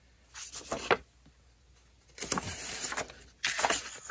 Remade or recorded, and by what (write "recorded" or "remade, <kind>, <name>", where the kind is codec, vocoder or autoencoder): recorded